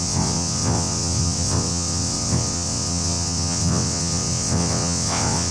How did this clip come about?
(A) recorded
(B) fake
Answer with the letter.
B